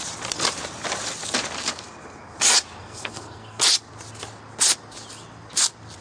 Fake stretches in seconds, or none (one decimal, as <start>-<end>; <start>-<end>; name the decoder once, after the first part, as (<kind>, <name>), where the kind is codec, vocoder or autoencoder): 2.8-3.6 (codec, SNAC)